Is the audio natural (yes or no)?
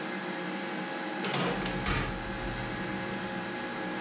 yes